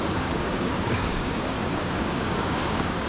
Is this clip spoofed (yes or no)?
yes